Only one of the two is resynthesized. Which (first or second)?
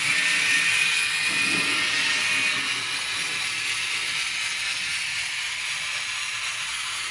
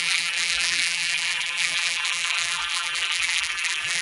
second